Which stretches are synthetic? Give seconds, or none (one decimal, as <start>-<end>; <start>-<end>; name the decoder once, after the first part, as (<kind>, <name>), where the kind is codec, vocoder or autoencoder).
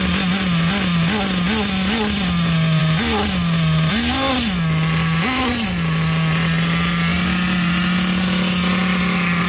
none